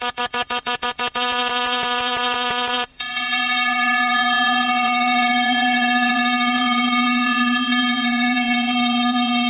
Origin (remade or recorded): remade